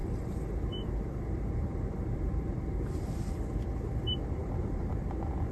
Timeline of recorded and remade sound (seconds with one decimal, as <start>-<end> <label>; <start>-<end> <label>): 0.0-3.3 remade; 3.3-4.4 recorded; 4.4-4.9 remade; 4.9-5.5 recorded